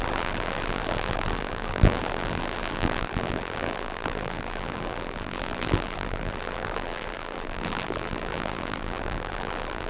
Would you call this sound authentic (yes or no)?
no